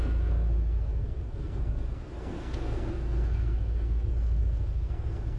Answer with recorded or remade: remade